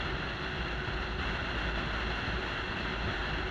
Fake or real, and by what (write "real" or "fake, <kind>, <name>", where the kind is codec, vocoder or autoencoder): real